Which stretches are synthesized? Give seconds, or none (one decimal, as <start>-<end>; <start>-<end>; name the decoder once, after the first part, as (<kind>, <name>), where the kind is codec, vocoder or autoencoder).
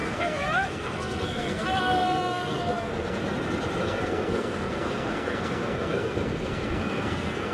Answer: 0.0-3.2 (codec, SNAC); 3.8-7.5